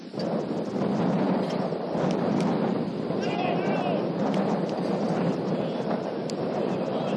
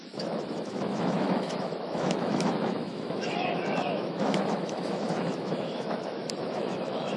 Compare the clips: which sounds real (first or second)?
first